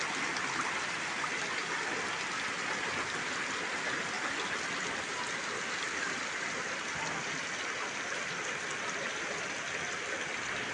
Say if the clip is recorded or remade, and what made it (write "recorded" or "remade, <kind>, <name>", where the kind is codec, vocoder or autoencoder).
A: recorded